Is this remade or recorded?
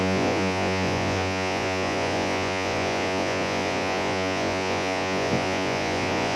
remade